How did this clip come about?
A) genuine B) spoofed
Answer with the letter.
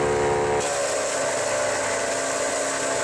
A